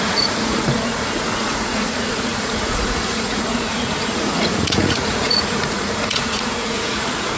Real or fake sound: fake